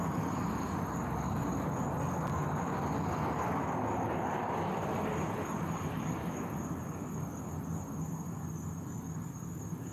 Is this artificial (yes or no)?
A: no